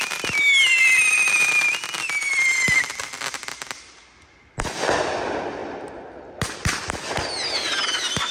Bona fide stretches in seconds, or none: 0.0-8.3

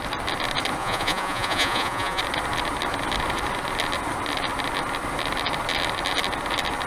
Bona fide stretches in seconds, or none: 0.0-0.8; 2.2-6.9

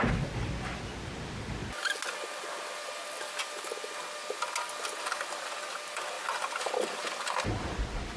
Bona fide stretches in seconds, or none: 0.0-8.2

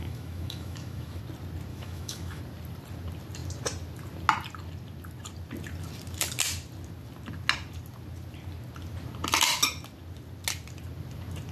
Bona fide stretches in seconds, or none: 1.2-1.7; 2.4-11.5

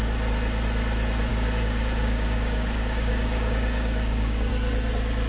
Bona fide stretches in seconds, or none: 0.0-1.3; 4.5-5.3

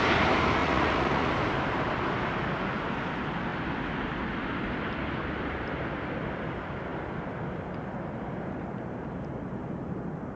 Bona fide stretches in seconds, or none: 0.0-0.6; 1.3-10.4

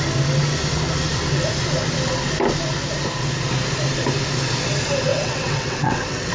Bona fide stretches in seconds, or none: 0.0-5.1

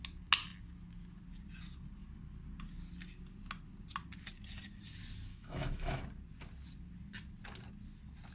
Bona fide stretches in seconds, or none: 0.0-5.3; 6.0-8.3